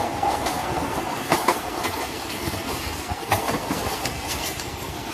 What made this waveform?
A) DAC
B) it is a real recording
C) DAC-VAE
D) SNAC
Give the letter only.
D